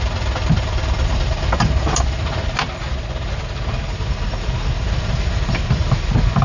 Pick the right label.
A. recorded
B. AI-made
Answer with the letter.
A